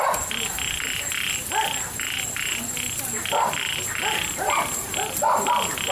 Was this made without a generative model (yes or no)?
yes